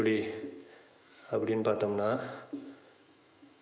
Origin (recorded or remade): remade